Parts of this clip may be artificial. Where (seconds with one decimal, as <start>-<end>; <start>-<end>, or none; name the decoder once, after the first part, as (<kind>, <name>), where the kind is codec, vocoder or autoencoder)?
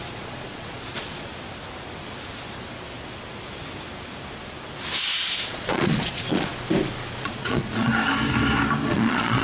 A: 0.0-1.3 (vocoder, Vocos); 5.4-6.5; 7.2-7.9; 8.9-9.4